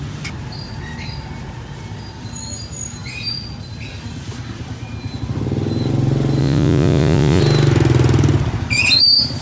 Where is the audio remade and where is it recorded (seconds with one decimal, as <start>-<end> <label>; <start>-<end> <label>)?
0.0-6.4 recorded; 6.4-7.4 remade; 7.4-9.4 recorded

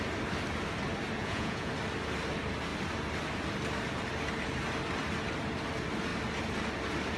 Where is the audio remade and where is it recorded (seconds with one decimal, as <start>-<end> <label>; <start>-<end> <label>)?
0.0-1.2 recorded; 1.2-1.7 remade; 1.7-7.2 recorded

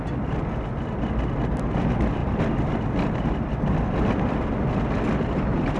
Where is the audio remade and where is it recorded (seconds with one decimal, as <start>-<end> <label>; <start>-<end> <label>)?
0.0-5.8 recorded

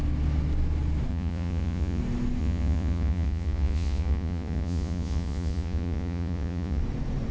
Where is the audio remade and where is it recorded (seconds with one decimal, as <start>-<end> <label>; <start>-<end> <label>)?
0.0-1.1 recorded; 1.1-2.0 remade; 2.0-2.4 recorded; 2.4-6.8 remade; 6.8-7.3 recorded